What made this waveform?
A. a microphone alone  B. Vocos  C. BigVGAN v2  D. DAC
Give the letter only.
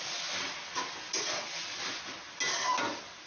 A